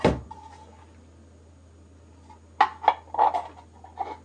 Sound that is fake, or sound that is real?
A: real